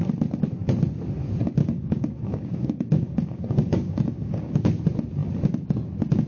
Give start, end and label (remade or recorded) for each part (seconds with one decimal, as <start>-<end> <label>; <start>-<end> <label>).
0.0-1.6 recorded; 1.6-4.7 remade; 4.7-6.3 recorded